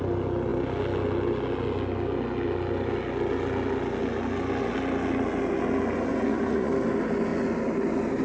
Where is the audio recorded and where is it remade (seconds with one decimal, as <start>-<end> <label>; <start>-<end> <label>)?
0.0-6.1 recorded; 6.1-6.7 remade; 6.7-8.2 recorded